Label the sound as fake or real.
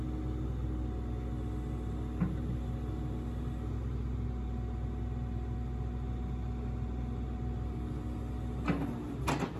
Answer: real